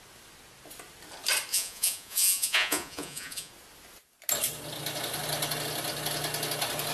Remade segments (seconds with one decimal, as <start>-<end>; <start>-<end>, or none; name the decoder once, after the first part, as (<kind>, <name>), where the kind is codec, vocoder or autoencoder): 1.5-3.5 (vocoder, Vocos)

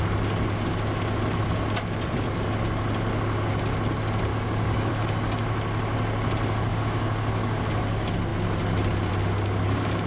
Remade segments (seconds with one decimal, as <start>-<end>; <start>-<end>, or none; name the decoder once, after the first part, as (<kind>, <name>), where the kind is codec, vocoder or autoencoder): 4.3-4.9 (codec, DAC); 6.7-7.6